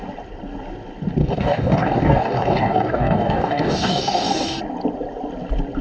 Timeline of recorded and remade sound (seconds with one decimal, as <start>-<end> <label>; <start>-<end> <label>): 0.0-1.2 recorded; 1.2-4.6 remade; 4.6-5.8 recorded

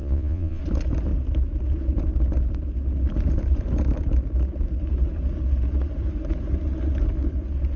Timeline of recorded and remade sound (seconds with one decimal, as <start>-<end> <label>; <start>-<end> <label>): 0.0-0.6 remade; 0.6-7.8 recorded

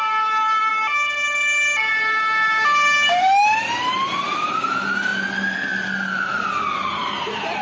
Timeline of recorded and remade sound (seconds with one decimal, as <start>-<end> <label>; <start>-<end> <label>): 0.0-0.7 remade; 0.7-1.8 recorded; 1.8-5.1 remade; 5.1-6.7 recorded; 6.7-7.6 remade

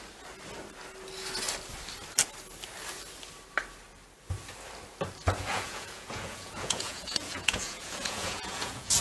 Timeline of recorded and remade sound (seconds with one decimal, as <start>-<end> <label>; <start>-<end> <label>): 0.0-5.5 recorded; 5.5-9.0 remade

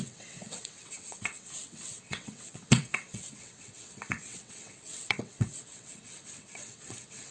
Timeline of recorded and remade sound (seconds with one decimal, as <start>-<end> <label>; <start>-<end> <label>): 0.0-7.3 remade